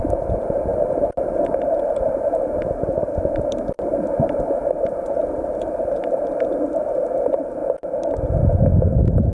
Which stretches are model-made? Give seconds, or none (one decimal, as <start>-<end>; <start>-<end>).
0.0-7.6; 8.4-9.3